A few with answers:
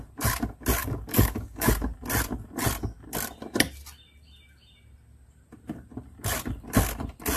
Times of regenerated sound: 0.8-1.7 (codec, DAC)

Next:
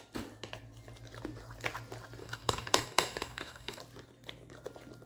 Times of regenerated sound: 2.2-3.8 (codec, DAC)

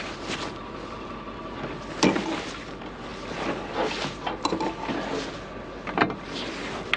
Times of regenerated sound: none

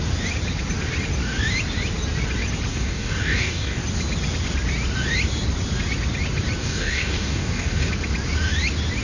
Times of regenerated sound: 2.7-3.8 (codec, DAC); 6.6-7.9

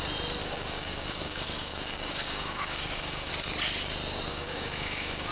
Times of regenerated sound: 0.4-3.3 (codec, DAC); 4.3-5.3

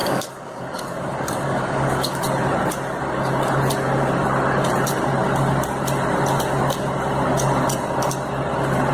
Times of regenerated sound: 0.0-2.2 (codec, DAC)

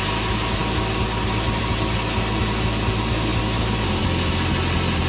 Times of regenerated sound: none